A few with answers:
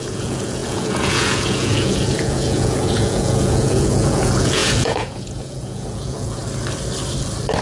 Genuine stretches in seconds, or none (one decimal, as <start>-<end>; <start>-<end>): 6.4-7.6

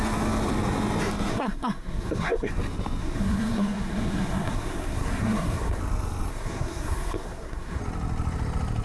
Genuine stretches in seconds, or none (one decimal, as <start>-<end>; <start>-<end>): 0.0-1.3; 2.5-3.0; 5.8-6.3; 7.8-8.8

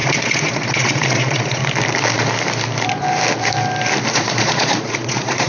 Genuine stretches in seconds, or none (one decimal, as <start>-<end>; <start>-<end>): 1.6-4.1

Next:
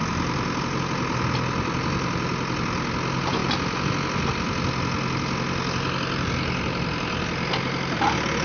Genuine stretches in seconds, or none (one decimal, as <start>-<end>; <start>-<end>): 0.0-8.4